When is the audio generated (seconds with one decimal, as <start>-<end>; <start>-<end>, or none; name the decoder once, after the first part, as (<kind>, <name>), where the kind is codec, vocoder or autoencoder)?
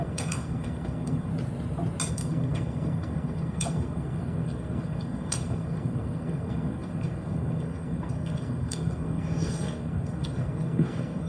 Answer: 0.0-1.3 (codec, SNAC); 2.1-11.3